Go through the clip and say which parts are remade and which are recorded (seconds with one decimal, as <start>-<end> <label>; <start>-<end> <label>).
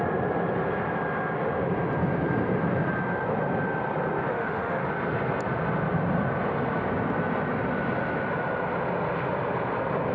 0.0-4.3 recorded; 4.3-4.8 remade; 4.8-10.1 recorded